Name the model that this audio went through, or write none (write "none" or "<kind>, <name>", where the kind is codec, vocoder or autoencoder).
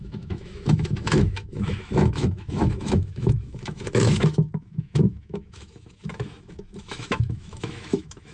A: autoencoder, DAC-VAE